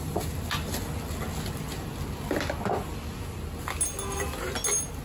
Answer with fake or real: real